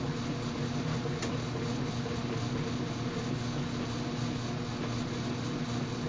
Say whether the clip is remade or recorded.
recorded